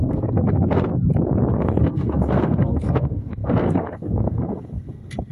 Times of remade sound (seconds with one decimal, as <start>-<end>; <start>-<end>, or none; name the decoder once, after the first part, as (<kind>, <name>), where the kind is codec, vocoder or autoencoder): 0.0-0.9 (codec, SNAC); 1.5-5.3